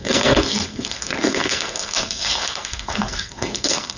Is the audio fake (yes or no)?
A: yes